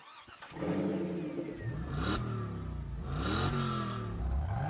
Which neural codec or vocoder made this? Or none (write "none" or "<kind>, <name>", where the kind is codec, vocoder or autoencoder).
none